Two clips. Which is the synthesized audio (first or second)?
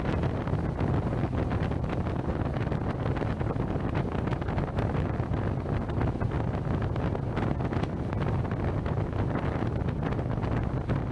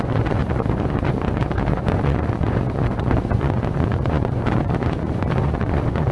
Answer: second